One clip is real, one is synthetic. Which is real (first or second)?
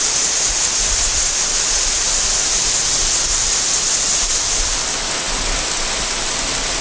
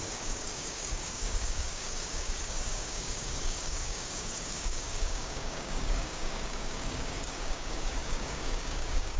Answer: first